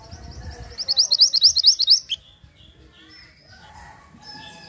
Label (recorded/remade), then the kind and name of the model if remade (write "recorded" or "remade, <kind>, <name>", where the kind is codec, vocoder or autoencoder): recorded